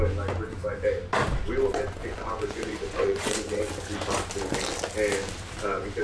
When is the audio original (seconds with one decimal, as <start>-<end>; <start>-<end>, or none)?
0.0-2.0; 3.6-6.0